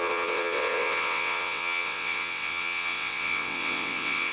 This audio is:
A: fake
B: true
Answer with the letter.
A